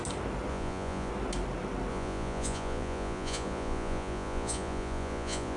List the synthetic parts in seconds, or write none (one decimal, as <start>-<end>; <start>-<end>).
0.5-1.1; 1.9-5.6